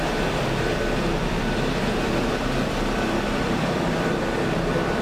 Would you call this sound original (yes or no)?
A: no